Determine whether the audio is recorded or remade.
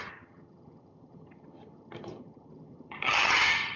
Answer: remade